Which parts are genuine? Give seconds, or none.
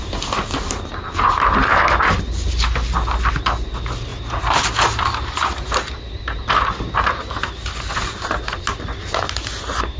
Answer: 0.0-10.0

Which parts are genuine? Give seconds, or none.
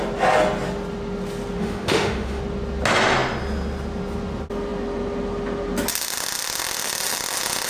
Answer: 0.0-1.6; 2.4-7.7